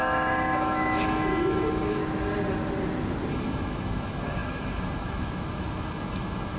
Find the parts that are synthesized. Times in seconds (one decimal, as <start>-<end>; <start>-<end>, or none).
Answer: 0.0-2.0; 3.3-6.6